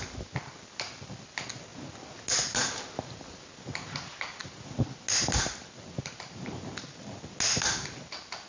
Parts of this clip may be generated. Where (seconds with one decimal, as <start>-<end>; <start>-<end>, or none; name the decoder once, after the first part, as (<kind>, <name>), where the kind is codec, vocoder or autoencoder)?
none